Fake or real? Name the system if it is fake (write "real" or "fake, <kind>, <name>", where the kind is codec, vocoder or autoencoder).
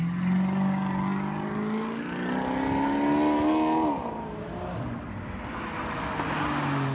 real